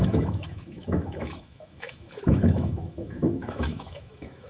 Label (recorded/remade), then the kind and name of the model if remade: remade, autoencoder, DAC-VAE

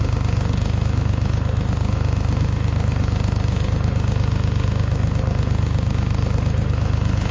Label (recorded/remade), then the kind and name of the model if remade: remade, autoencoder, DAC-VAE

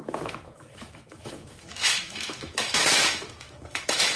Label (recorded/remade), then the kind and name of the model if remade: remade, autoencoder, DAC-VAE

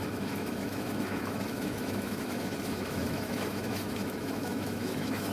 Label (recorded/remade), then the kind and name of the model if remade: remade, autoencoder, DAC-VAE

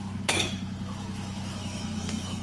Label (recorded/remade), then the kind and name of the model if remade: remade, autoencoder, DAC-VAE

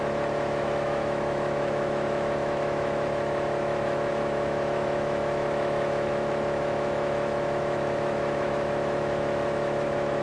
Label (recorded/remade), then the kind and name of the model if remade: remade, autoencoder, DAC-VAE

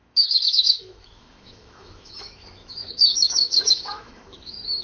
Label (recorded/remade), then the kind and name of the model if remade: remade, autoencoder, DAC-VAE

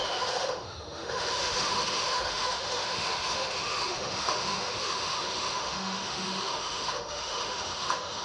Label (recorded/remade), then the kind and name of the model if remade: remade, autoencoder, DAC-VAE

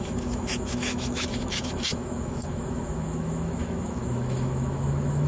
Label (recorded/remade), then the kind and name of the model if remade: remade, autoencoder, DAC-VAE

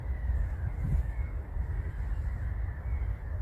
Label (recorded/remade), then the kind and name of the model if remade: recorded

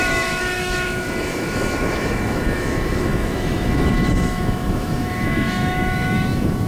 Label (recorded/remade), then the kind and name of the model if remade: remade, autoencoder, DAC-VAE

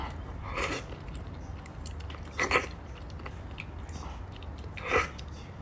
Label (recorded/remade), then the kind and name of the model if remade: recorded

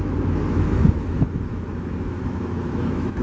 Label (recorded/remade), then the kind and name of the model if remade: remade, autoencoder, DAC-VAE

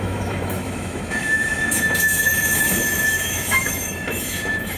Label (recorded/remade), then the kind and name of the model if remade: remade, autoencoder, DAC-VAE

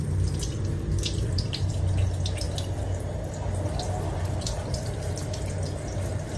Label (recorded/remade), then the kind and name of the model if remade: recorded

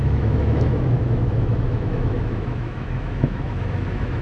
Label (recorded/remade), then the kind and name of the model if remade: remade, autoencoder, DAC-VAE